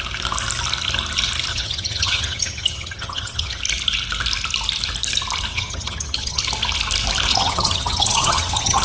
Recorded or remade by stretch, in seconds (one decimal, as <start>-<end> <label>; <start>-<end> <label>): 0.0-1.5 recorded; 1.5-3.6 remade; 3.6-5.5 recorded; 5.5-6.4 remade; 6.4-7.3 recorded; 7.3-8.8 remade